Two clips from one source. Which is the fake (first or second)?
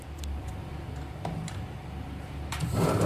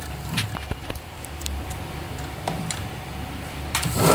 second